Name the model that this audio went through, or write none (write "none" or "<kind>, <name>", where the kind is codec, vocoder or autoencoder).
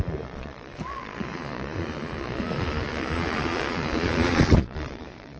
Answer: vocoder, Vocos